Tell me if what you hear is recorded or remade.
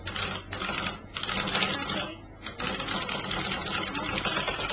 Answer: recorded